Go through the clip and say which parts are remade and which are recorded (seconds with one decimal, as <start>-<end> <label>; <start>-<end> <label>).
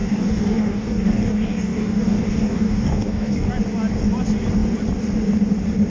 0.0-3.5 remade; 3.5-5.9 recorded